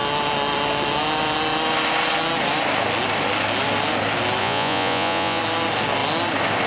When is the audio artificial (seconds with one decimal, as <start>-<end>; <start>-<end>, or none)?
4.4-5.4